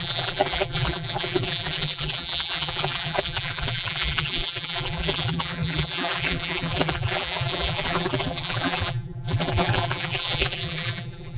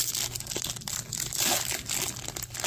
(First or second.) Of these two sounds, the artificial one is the first